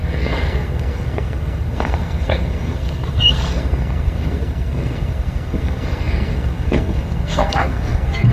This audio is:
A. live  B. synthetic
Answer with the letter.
B